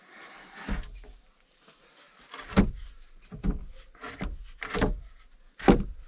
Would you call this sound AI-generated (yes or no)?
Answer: no